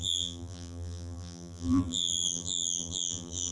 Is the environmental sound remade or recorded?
remade